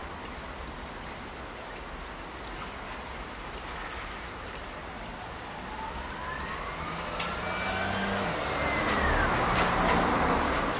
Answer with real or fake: real